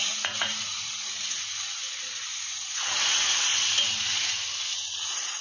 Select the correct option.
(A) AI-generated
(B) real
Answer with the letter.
A